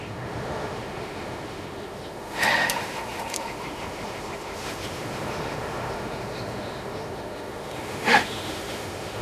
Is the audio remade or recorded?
remade